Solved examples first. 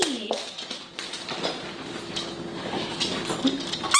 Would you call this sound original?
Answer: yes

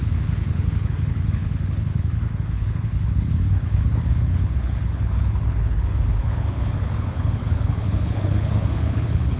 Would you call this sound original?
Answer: no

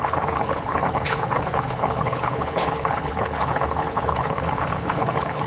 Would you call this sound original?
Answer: no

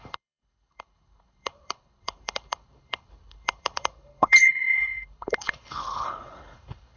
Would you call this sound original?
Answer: no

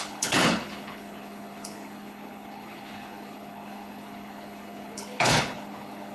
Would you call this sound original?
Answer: no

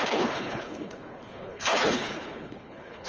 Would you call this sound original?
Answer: no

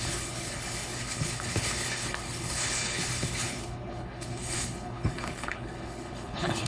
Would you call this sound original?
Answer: no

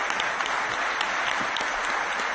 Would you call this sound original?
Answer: yes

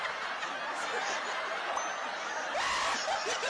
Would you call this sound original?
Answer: yes